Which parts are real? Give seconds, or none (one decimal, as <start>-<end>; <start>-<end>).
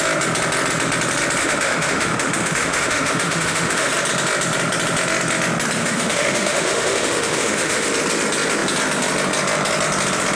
0.0-1.4; 3.9-5.8; 7.9-10.3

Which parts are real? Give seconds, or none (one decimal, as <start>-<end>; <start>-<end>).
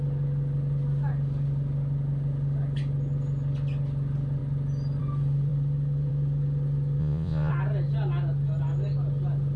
0.0-7.0; 7.5-9.6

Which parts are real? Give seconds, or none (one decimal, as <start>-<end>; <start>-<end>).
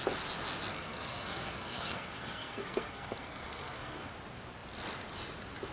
0.0-0.7; 4.1-5.7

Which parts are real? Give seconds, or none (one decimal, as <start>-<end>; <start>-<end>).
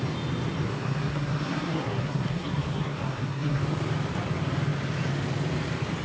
0.0-0.7; 3.6-6.0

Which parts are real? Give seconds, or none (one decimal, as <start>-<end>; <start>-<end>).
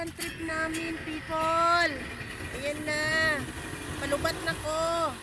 0.0-5.2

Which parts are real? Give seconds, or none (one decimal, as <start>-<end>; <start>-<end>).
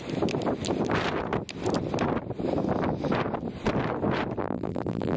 0.0-4.4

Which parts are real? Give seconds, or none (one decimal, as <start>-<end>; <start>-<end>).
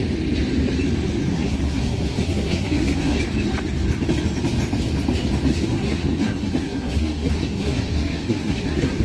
0.0-1.3; 3.2-5.5